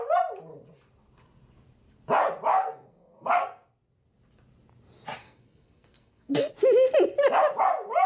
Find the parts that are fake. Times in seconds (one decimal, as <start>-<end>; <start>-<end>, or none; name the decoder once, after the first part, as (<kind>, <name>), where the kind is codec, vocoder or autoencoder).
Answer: 2.5-3.7 (codec, SNAC); 5.2-6.5